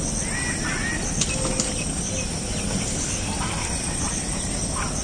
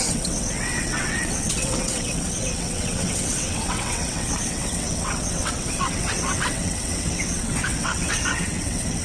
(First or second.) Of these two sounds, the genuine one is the first